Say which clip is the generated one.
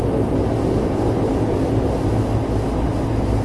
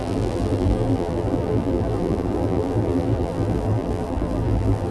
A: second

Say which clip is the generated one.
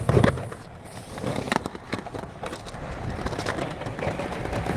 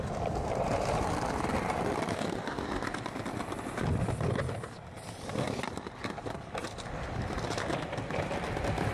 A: first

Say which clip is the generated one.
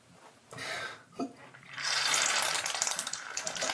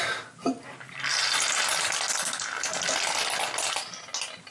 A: first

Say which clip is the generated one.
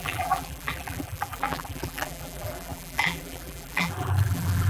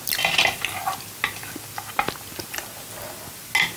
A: first